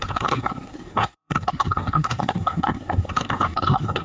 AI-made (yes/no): yes